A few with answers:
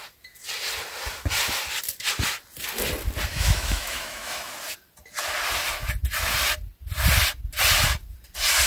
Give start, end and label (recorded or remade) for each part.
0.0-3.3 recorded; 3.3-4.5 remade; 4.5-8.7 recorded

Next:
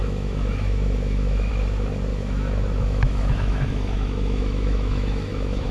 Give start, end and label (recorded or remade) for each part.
0.0-1.5 remade; 1.5-2.1 recorded; 2.1-5.7 remade